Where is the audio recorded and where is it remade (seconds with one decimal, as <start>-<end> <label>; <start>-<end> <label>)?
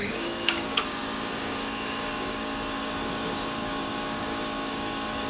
0.0-5.3 remade